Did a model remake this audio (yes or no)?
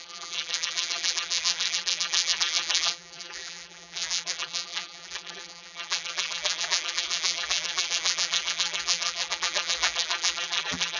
yes